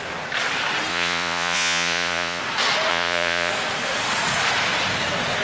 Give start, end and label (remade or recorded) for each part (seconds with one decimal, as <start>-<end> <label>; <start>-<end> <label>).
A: 0.0-0.9 recorded; 0.9-2.4 remade; 2.4-2.9 recorded; 2.9-3.5 remade; 3.5-5.4 recorded